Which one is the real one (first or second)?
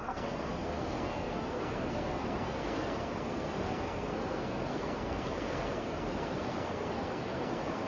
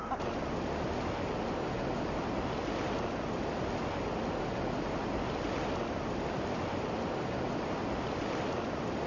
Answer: second